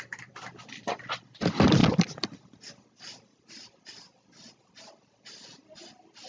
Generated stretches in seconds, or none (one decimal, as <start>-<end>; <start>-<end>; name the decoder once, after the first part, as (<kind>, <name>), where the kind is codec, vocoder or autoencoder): 0.0-1.8 (vocoder, BigVGAN v2); 2.7-6.3